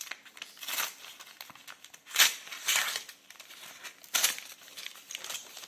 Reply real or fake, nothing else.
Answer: real